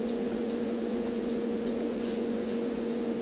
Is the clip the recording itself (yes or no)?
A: no